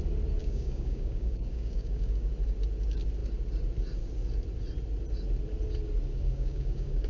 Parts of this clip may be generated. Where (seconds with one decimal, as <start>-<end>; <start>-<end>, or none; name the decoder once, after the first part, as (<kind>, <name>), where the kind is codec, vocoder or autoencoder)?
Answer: 0.4-2.3 (codec, DAC); 6.1-7.1